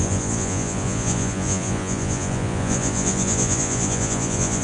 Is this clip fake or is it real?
fake